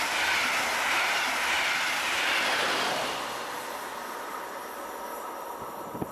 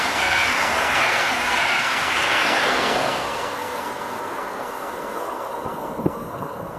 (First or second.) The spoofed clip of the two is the second